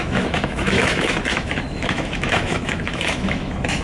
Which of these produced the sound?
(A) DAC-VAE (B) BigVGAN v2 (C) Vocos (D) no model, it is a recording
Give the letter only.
A